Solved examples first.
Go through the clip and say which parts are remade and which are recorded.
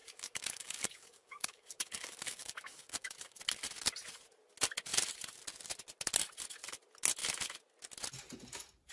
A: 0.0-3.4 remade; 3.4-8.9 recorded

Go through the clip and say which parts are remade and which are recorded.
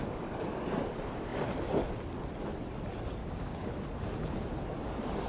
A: 0.0-3.2 recorded; 3.2-3.7 remade; 3.7-5.3 recorded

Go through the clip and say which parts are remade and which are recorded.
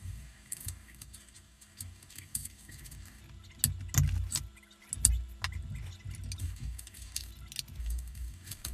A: 0.0-3.2 remade; 3.2-6.4 recorded; 6.4-7.3 remade; 7.3-7.8 recorded; 7.8-8.7 remade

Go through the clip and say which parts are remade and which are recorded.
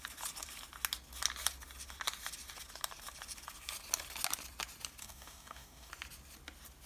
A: 0.0-5.0 recorded; 5.0-5.9 remade; 5.9-6.9 recorded